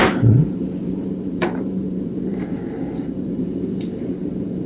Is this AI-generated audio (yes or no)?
yes